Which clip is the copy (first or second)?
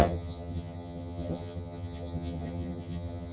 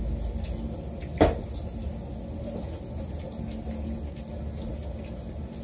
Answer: first